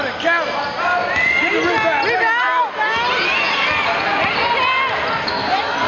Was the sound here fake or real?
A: real